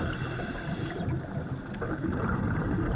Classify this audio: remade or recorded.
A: recorded